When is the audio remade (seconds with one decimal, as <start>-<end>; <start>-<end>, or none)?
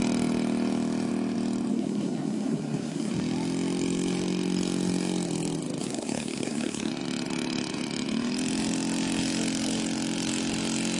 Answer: 1.7-3.1; 5.8-6.9